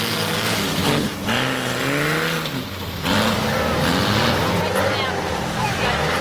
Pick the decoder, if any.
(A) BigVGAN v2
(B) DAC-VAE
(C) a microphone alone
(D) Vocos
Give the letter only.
C